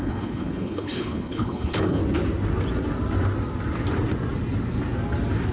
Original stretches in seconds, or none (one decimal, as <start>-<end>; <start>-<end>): 2.0-5.5